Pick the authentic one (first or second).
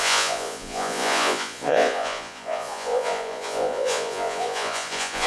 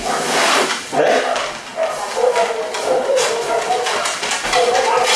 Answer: second